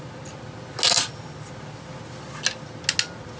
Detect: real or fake real